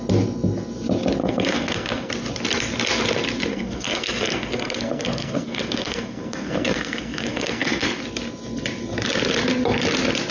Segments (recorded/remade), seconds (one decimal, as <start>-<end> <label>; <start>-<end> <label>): 0.0-1.2 recorded; 1.2-2.1 remade; 2.1-3.5 recorded; 3.5-8.0 remade; 8.0-10.3 recorded

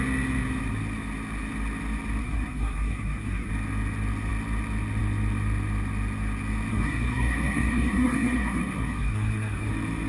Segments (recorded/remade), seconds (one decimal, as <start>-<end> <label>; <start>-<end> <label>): 0.0-2.2 recorded; 2.2-3.5 remade; 3.5-6.7 recorded; 6.7-9.7 remade; 9.7-10.1 recorded

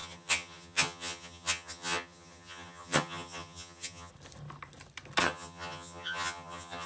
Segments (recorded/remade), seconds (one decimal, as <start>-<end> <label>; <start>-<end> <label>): 0.0-4.1 remade; 4.1-5.2 recorded; 5.2-6.9 remade

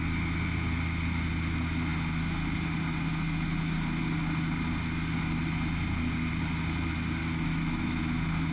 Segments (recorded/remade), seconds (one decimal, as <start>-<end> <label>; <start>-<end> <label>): 0.0-7.2 recorded; 7.2-8.0 remade; 8.0-8.5 recorded